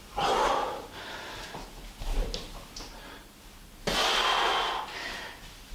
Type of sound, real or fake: real